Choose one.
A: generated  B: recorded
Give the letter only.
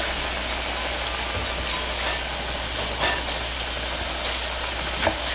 B